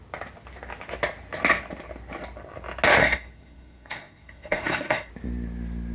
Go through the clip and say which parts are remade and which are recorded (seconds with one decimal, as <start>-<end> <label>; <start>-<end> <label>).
0.0-3.0 recorded; 3.0-5.1 remade; 5.1-5.9 recorded